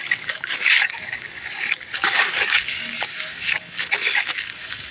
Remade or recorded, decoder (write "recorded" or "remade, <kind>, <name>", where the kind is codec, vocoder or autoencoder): remade, codec, DAC